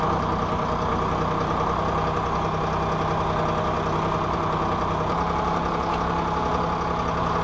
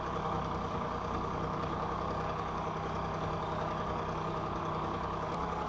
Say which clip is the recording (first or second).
first